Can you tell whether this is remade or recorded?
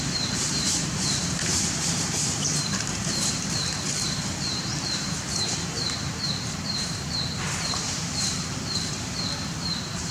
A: remade